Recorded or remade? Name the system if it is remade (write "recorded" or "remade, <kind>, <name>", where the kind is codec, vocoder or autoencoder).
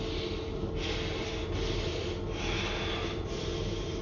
recorded